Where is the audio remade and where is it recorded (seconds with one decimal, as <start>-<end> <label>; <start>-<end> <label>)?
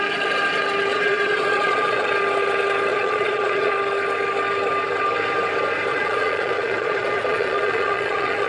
0.0-0.9 recorded; 0.9-2.1 remade; 2.1-2.9 recorded; 2.9-3.7 remade; 3.7-5.9 recorded; 5.9-8.5 remade